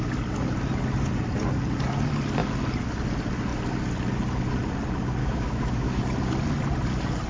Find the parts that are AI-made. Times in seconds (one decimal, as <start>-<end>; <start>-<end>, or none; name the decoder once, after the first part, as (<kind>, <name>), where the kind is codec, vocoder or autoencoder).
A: 5.2-6.0 (autoencoder, DAC-VAE)